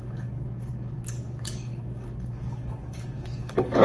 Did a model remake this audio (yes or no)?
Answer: yes